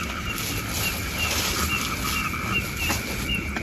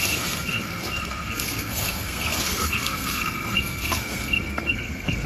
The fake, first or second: second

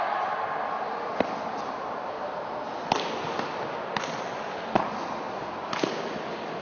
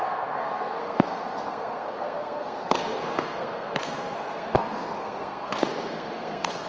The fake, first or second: second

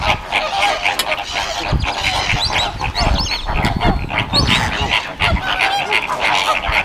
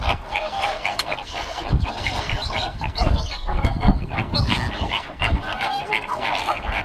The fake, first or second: second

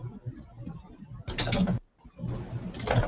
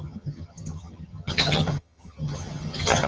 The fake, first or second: second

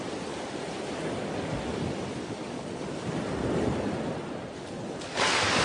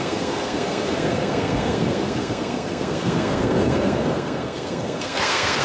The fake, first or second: second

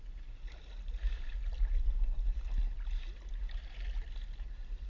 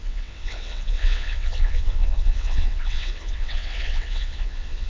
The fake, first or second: second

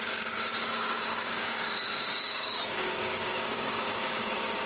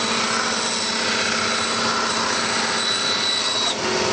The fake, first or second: first